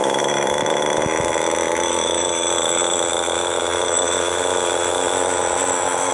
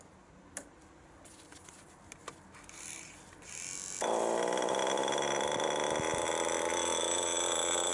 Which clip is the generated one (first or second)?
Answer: first